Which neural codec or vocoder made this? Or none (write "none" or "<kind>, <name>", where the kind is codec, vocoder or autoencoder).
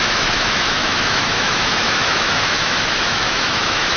autoencoder, DAC-VAE